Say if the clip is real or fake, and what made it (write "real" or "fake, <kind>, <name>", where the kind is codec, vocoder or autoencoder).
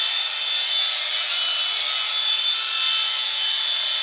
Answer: real